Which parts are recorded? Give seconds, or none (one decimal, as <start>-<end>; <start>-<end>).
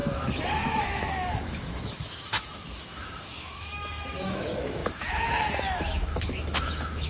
none